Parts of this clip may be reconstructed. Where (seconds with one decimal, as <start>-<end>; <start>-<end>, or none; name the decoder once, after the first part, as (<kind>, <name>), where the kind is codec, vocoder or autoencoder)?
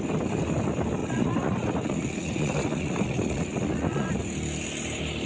1.0-4.1 (vocoder, Vocos)